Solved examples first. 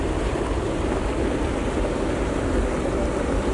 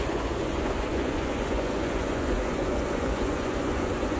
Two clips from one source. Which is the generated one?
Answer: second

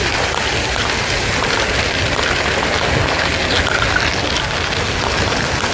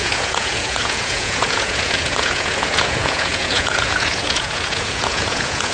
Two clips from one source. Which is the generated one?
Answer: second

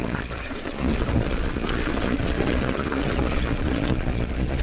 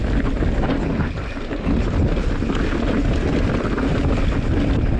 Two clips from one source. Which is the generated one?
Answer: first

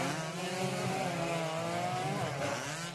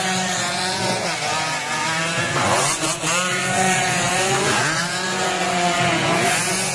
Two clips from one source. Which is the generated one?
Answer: second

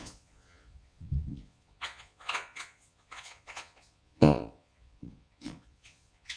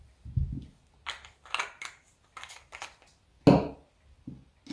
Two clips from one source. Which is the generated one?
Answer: first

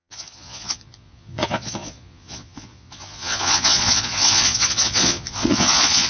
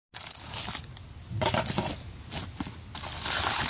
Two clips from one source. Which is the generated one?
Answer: first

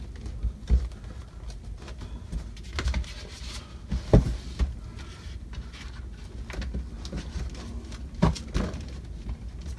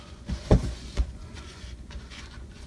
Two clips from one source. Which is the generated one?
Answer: second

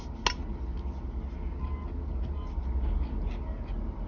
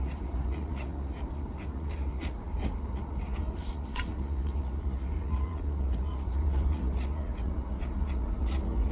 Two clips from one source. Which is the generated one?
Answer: second